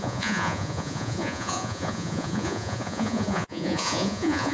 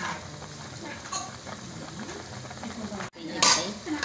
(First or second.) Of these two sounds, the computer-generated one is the first